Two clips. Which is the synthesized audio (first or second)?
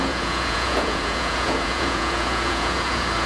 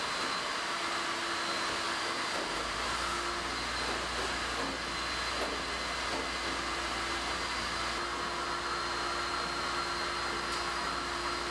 first